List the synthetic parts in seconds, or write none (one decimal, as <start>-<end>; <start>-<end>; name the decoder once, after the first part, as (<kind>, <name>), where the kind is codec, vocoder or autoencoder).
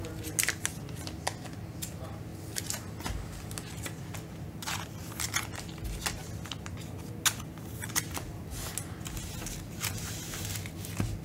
none